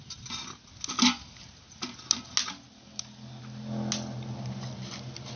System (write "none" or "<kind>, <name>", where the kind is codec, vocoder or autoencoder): none